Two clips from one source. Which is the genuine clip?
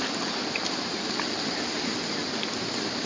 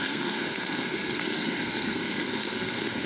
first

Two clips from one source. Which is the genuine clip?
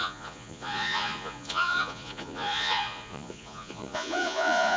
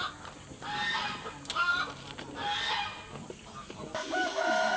second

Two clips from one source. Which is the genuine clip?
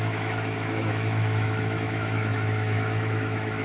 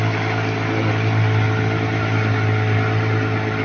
second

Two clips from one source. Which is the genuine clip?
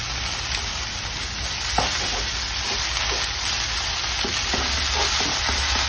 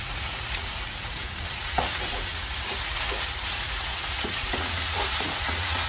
first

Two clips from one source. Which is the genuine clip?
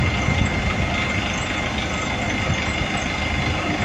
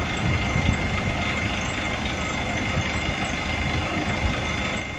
first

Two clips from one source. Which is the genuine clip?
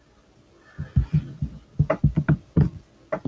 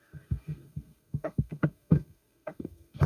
first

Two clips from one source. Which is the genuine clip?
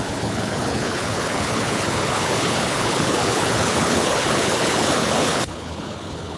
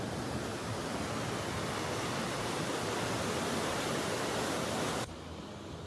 second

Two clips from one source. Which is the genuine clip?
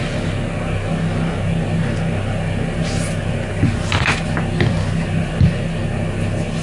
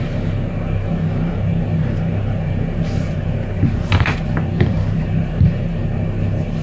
first